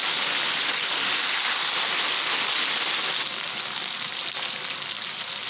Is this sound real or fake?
real